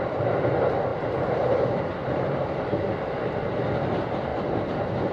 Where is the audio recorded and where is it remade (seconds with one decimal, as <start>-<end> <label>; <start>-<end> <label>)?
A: 0.0-4.3 remade; 4.3-5.1 recorded